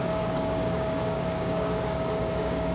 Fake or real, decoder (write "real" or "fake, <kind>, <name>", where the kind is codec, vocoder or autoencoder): fake, codec, DAC